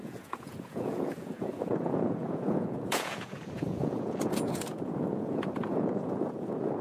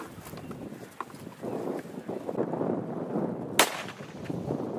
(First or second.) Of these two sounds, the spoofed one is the first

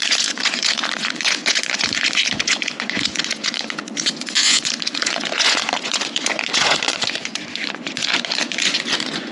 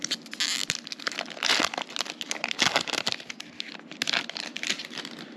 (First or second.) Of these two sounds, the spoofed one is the first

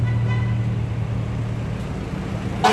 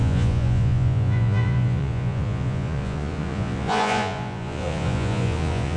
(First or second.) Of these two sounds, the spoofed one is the second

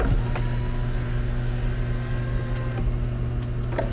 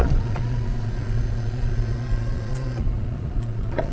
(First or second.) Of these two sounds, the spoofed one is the second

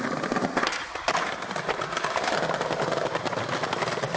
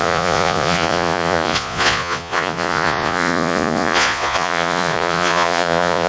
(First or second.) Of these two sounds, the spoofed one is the second